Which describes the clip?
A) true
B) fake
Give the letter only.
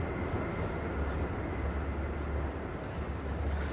A